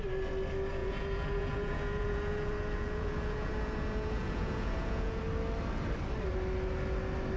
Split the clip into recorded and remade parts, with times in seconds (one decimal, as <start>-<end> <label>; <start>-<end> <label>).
0.0-0.8 recorded; 0.8-5.2 remade; 5.2-7.4 recorded